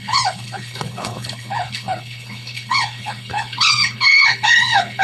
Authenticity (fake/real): fake